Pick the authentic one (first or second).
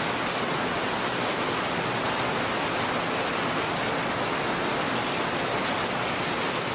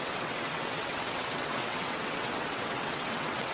first